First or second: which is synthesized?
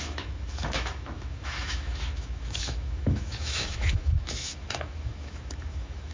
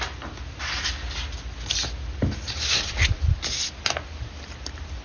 first